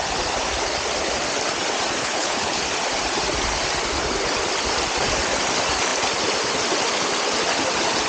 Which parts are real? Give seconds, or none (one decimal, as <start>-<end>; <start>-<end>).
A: 0.0-2.0; 2.6-8.1